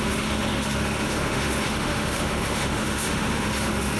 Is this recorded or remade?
remade